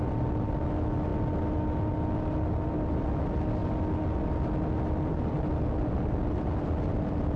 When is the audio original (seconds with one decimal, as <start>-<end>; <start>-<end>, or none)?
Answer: 0.0-7.4